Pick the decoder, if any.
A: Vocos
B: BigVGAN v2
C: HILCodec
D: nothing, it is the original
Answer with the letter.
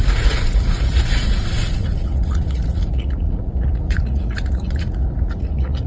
A